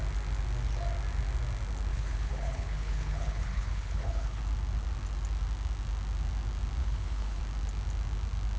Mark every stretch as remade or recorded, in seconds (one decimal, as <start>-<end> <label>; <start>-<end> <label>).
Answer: 0.0-1.9 recorded; 1.9-4.4 remade; 4.4-6.8 recorded; 6.8-7.4 remade; 7.4-8.6 recorded